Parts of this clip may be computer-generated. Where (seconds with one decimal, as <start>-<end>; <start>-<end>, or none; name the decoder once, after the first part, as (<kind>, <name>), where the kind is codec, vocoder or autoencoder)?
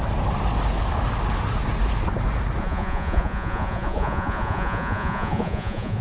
2.6-6.0 (vocoder, Vocos)